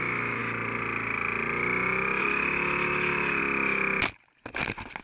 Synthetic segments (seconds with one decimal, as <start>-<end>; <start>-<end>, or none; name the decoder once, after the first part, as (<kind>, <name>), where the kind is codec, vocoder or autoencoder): 0.0-0.4 (autoencoder, DAC-VAE); 2.2-3.4